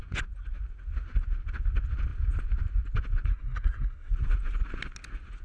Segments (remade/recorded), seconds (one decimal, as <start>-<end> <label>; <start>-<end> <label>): 0.0-3.3 recorded; 3.3-4.1 remade; 4.1-5.4 recorded